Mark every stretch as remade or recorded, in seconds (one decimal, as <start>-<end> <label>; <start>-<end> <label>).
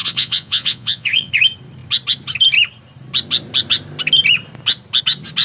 0.0-1.3 remade; 1.3-5.4 recorded